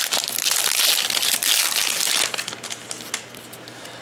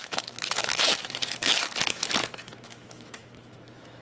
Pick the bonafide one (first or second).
first